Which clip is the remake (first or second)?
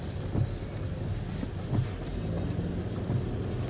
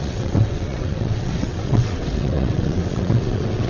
second